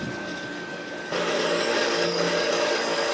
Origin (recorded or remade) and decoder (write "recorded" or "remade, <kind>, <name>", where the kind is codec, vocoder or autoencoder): remade, codec, DAC